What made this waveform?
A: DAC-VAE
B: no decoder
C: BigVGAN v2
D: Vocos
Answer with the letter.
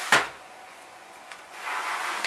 D